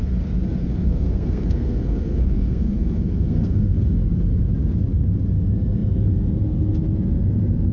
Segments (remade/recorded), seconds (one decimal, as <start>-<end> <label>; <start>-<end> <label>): 0.0-0.6 recorded; 0.6-3.9 remade; 3.9-7.7 recorded